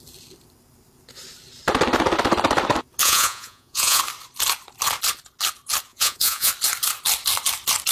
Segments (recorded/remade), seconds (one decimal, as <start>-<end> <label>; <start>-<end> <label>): 0.0-3.0 recorded; 3.0-4.0 remade; 4.0-5.9 recorded; 5.9-6.5 remade; 6.5-7.9 recorded